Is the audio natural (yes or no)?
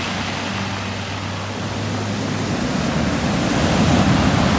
yes